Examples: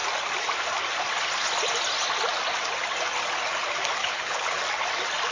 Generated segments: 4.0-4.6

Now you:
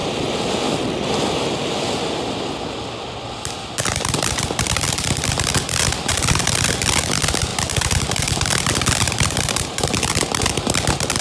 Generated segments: none

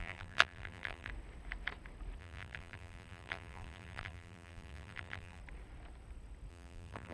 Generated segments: 0.0-1.1; 2.2-5.4; 6.5-7.1

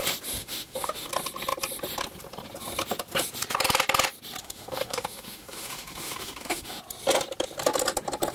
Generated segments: 0.4-1.1; 4.4-6.8

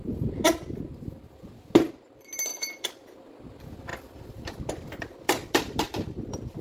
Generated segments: 2.5-3.3; 3.9-6.6

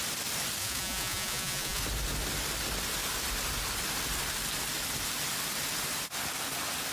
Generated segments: 0.6-1.8

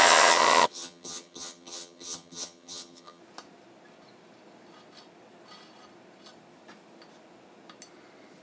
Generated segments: 0.0-3.2